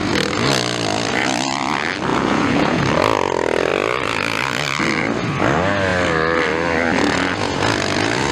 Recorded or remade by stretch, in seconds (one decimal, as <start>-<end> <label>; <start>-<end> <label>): 0.0-2.1 recorded; 2.1-2.8 remade; 2.8-8.3 recorded